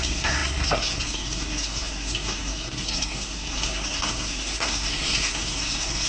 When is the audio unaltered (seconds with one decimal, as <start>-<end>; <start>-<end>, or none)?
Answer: none